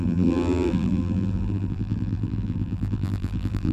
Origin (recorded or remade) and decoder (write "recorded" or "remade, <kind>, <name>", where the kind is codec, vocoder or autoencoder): remade, vocoder, BigVGAN v2